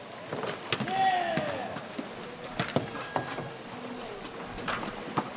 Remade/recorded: recorded